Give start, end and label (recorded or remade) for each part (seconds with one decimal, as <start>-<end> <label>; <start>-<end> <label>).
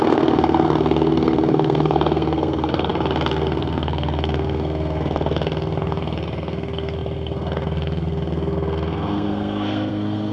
0.0-10.3 remade